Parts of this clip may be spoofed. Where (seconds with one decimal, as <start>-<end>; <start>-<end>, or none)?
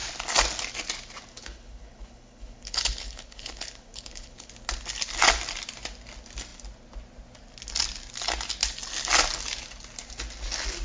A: 1.3-4.5